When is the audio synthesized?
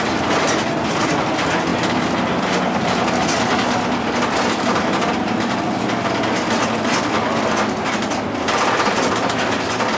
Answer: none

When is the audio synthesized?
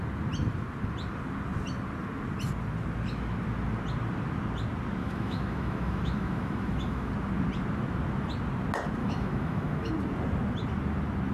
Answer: 5.0-7.1 (autoencoder, DAC-VAE); 9.0-9.9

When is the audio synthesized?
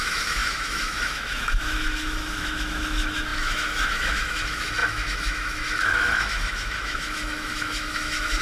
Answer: 0.0-8.4 (autoencoder, DAC-VAE)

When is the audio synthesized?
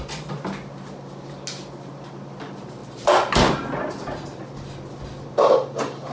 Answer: none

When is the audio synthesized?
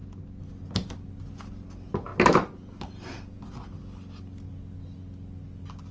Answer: none